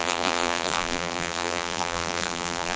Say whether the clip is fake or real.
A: fake